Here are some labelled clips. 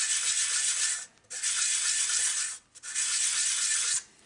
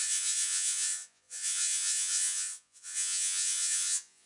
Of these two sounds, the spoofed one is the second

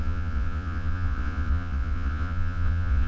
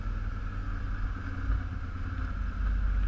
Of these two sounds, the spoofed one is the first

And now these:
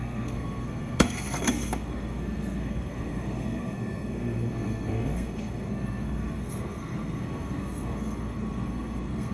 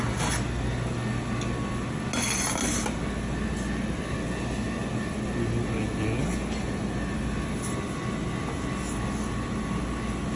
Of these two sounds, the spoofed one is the first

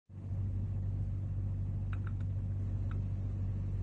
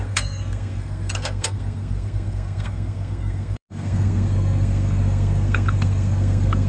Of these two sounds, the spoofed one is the second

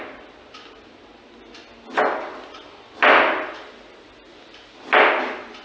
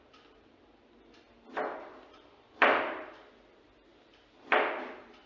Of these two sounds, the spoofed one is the second